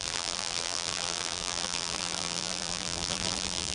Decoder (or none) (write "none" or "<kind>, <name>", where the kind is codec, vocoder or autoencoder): vocoder, BigVGAN v2